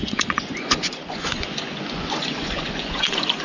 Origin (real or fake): fake